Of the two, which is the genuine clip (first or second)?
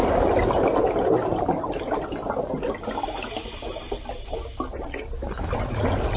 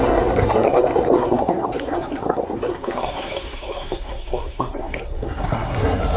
first